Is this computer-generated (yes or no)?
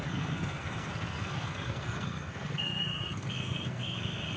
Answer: yes